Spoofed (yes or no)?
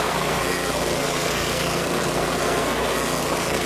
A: yes